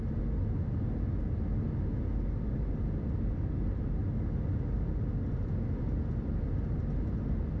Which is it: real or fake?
real